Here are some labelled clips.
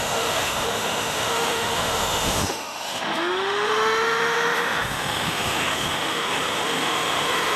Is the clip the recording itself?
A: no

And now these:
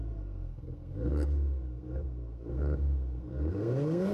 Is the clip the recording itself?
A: no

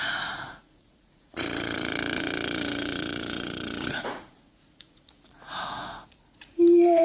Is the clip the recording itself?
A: no